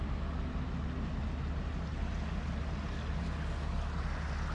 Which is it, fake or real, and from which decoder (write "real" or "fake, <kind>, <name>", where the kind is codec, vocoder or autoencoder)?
real